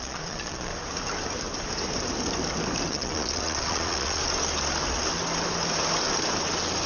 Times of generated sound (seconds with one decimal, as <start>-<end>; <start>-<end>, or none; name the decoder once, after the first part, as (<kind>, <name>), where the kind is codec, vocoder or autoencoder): 0.0-0.7 (vocoder, Vocos); 2.9-4.2